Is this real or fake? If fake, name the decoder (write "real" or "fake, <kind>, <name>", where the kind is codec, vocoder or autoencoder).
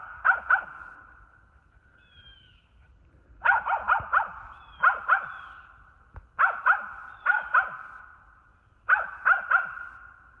real